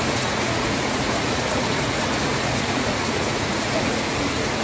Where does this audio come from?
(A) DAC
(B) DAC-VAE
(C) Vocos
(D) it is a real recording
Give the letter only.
C